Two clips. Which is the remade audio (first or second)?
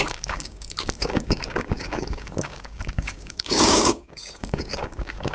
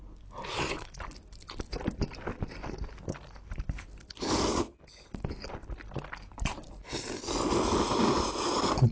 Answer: first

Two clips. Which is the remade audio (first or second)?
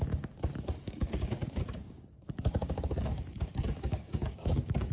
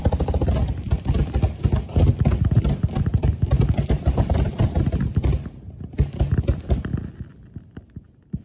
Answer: first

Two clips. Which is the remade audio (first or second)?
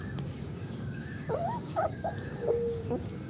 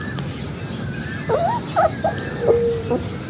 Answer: first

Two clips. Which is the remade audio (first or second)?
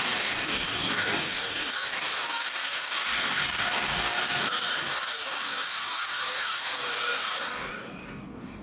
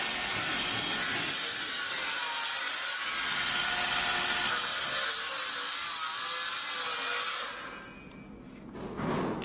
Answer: first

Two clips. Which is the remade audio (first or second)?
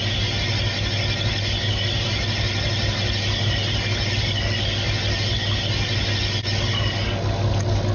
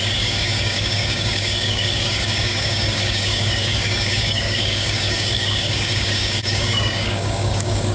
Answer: second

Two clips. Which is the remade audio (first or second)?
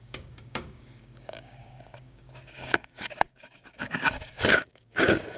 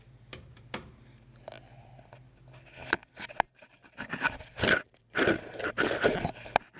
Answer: first